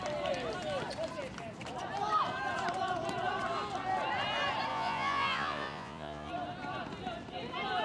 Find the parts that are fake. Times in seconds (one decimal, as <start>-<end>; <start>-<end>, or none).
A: 4.7-6.3

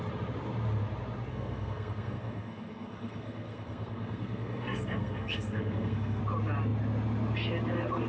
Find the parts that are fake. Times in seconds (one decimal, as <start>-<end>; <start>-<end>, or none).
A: 1.3-6.2

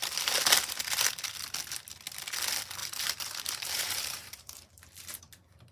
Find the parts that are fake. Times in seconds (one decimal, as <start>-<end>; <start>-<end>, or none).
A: 2.8-5.2

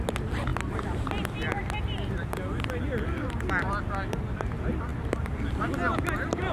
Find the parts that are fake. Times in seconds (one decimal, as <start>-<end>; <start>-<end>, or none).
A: 4.9-5.4